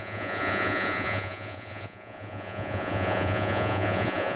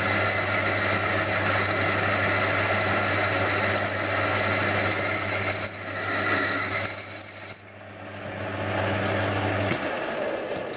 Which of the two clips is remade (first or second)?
first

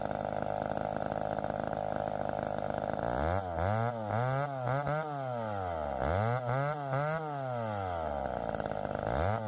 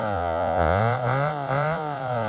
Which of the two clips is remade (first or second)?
second